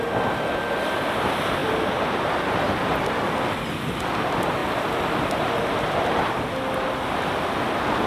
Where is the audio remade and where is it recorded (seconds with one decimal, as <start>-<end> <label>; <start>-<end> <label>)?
0.0-8.1 recorded

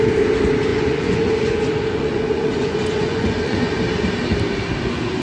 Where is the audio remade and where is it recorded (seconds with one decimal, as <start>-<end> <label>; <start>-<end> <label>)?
0.0-0.7 recorded; 0.7-3.8 remade; 3.8-5.2 recorded

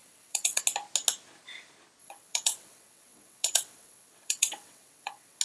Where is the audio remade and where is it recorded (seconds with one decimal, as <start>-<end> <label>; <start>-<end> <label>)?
0.0-0.6 remade; 0.6-2.0 recorded; 2.0-5.4 remade

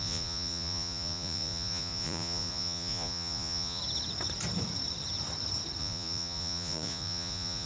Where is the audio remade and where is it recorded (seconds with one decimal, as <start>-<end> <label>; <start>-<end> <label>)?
0.0-3.8 remade; 3.8-5.8 recorded; 5.8-7.7 remade

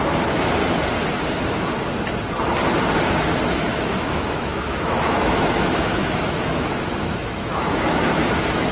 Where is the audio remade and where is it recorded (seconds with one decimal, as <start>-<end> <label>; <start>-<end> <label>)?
0.0-0.6 remade; 0.6-3.8 recorded; 3.8-8.7 remade

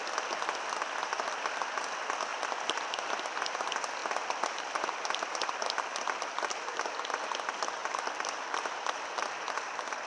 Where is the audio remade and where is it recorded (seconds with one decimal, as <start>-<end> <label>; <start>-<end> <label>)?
0.0-2.3 recorded; 2.3-3.1 remade; 3.1-4.0 recorded; 4.0-6.0 remade; 6.0-7.8 recorded; 7.8-9.1 remade; 9.1-10.1 recorded

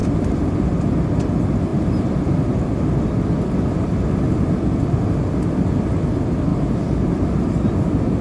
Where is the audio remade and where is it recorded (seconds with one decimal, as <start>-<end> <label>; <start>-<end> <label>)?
0.0-0.8 remade; 0.8-6.5 recorded; 6.5-7.1 remade; 7.1-8.2 recorded